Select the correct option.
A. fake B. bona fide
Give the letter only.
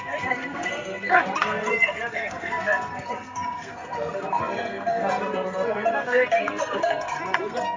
A